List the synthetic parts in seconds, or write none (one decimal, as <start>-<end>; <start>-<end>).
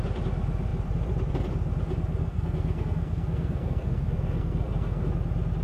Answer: 2.2-5.1